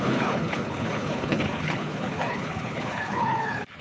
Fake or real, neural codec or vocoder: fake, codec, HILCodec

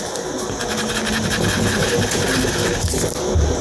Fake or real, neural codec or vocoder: real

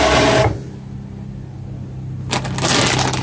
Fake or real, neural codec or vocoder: real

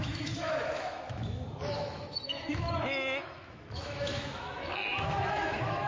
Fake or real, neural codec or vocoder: fake, autoencoder, DAC-VAE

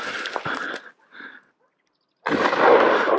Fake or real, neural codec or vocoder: real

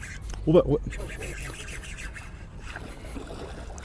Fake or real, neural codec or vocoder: real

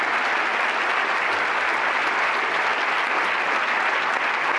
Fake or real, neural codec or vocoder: real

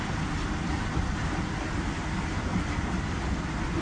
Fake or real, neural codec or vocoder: real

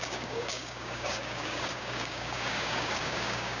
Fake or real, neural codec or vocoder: fake, codec, DAC